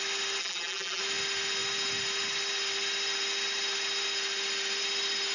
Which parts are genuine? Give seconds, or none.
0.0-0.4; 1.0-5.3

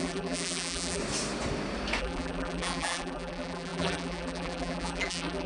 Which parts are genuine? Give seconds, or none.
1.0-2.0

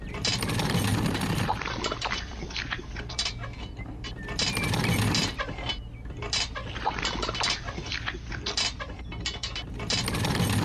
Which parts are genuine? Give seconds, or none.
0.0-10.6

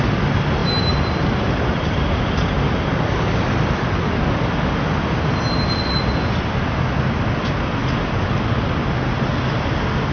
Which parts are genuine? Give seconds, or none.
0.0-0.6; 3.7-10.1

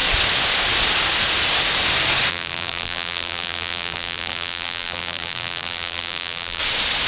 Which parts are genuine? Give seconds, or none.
0.0-2.3; 6.6-7.1